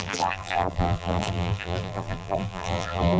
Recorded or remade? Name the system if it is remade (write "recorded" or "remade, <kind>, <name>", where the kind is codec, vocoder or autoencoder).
remade, vocoder, BigVGAN v2